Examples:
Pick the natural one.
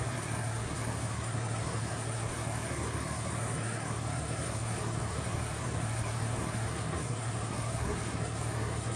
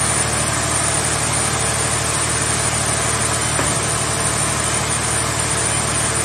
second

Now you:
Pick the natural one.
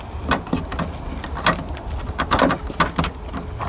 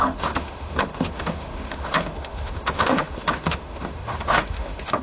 first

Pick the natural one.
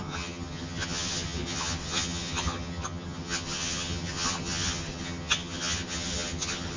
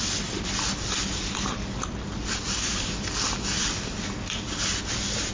second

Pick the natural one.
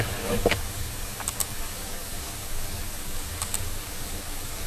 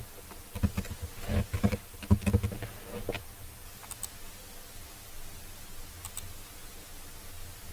second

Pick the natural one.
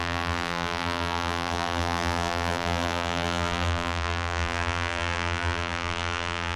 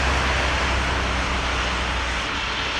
second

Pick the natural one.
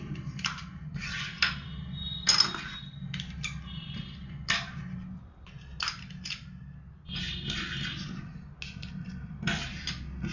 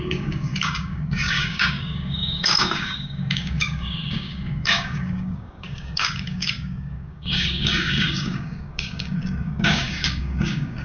first